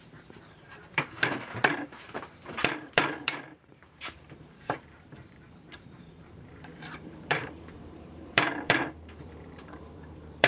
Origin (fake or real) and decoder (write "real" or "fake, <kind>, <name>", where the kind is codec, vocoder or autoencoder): fake, vocoder, BigVGAN v2